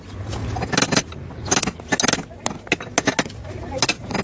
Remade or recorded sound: recorded